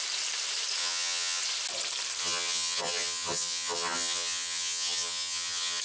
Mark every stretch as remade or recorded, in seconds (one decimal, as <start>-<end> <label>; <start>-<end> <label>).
0.0-0.8 recorded; 0.8-1.4 remade; 1.4-2.2 recorded; 2.2-5.8 remade